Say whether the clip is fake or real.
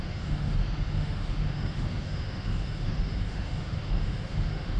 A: fake